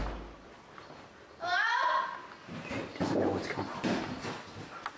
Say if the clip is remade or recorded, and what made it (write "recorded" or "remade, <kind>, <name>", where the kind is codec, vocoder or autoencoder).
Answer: recorded